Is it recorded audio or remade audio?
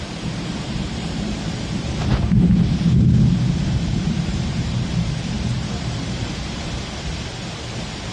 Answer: remade